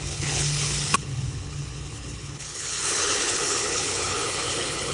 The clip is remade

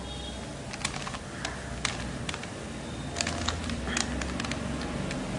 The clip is recorded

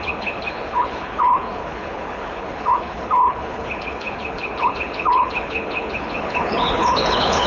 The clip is remade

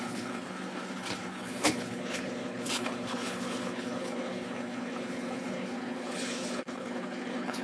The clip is remade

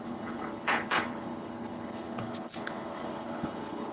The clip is remade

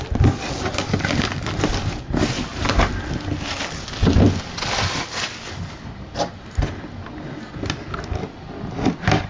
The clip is recorded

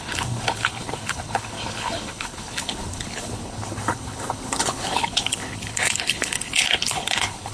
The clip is remade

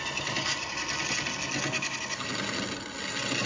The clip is recorded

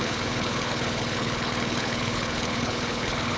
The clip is remade